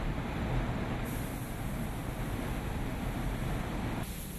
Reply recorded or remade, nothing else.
recorded